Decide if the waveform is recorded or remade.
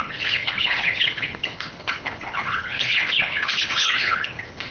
remade